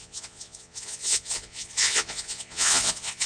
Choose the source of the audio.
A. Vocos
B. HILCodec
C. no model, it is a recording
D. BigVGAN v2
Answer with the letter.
A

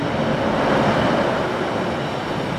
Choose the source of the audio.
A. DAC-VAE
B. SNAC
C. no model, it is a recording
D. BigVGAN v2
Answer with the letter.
C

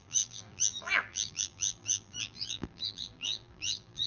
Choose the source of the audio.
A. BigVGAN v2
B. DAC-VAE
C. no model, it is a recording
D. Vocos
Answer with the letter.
A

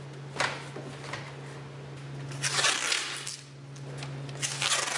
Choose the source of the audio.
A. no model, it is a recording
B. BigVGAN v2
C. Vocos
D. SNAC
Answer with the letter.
A